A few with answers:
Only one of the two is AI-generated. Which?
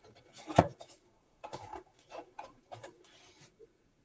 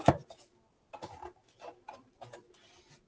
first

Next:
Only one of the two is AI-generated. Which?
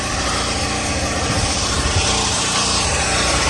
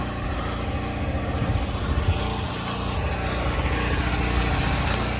first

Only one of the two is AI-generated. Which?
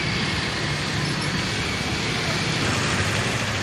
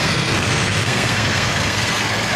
second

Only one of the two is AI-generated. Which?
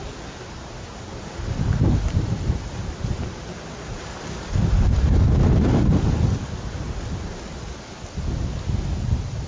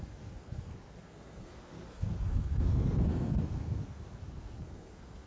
second